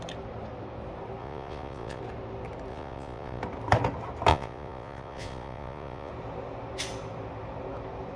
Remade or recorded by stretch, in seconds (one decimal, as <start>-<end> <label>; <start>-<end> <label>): 0.0-1.2 recorded; 1.2-2.0 remade; 2.0-2.7 recorded; 2.7-3.4 remade; 3.4-4.3 recorded; 4.3-6.1 remade; 6.1-8.2 recorded